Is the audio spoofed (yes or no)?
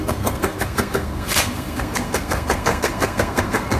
yes